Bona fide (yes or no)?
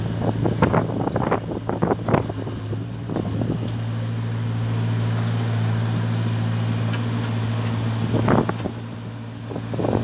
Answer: yes